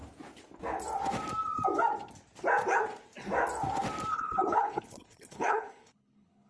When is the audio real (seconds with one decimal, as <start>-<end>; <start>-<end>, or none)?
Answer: 0.0-4.1